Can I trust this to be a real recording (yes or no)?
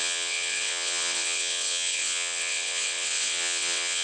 no